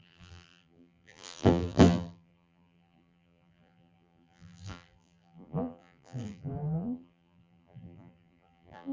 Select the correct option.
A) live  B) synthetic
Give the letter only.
B